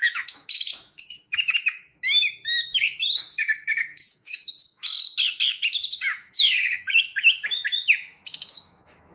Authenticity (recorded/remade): remade